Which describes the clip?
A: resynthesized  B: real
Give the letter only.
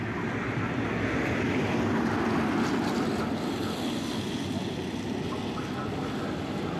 B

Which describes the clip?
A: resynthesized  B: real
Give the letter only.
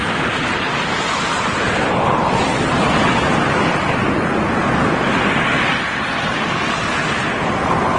B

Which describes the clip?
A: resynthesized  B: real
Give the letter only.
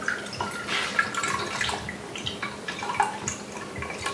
B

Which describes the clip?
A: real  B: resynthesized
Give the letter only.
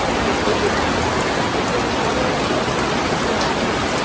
A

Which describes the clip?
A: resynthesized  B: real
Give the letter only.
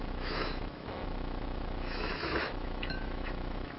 A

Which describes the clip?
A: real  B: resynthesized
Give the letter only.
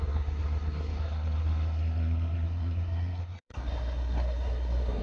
B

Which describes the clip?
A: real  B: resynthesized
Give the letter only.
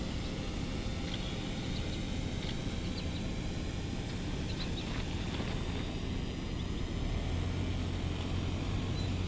A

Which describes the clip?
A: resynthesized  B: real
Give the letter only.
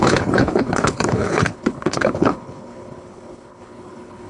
A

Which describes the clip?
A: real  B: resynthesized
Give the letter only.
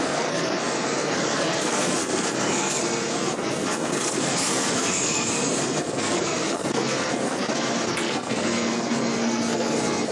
B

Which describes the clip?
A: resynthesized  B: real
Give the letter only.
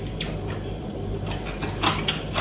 B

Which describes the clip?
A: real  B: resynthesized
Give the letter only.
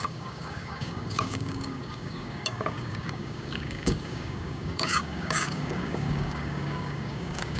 B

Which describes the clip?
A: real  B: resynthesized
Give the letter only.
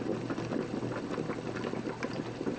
A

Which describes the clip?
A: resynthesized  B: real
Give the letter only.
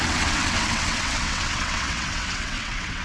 A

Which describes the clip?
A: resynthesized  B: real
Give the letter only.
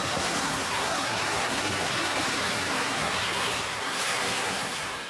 A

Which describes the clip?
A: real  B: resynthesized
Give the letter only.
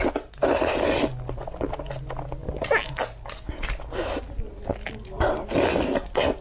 A